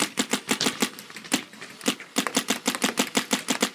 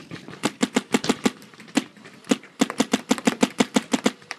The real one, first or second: first